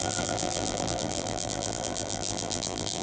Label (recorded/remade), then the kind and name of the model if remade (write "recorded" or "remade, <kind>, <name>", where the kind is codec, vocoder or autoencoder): remade, vocoder, BigVGAN v2